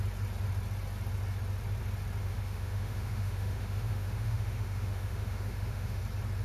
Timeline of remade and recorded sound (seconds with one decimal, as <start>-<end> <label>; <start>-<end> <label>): 0.0-2.2 recorded; 2.2-6.0 remade; 6.0-6.4 recorded